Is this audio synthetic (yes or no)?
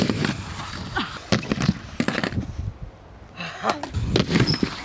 no